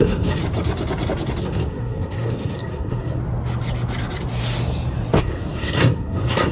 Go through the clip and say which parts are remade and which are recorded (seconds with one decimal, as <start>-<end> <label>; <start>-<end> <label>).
0.0-0.4 remade; 0.4-1.4 recorded; 1.4-3.2 remade; 3.2-5.2 recorded; 5.2-6.5 remade